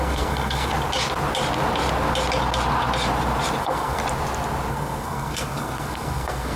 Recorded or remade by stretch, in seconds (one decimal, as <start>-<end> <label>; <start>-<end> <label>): 0.0-0.7 remade; 0.7-3.6 recorded; 3.6-4.0 remade; 4.0-4.7 recorded; 4.7-6.6 remade

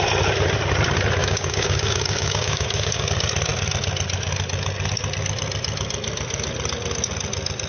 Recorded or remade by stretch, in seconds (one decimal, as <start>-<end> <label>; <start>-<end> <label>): 0.0-1.2 recorded; 1.2-3.0 remade; 3.0-7.7 recorded

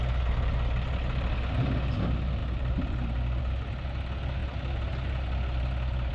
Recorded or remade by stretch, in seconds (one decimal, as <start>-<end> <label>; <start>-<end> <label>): 0.0-6.1 recorded

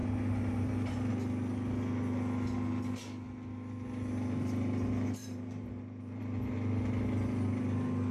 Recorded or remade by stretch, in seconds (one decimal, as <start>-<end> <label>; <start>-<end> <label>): 0.0-1.1 remade; 1.1-5.2 recorded; 5.2-6.2 remade; 6.2-8.1 recorded

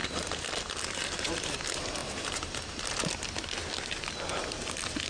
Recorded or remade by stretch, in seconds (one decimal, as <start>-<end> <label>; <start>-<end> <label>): 0.0-2.0 recorded; 2.0-2.6 remade; 2.6-5.1 recorded

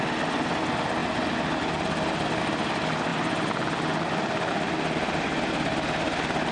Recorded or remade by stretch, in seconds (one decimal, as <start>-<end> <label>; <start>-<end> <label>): 0.0-6.5 recorded